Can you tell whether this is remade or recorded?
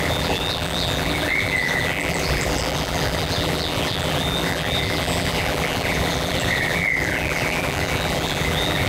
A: remade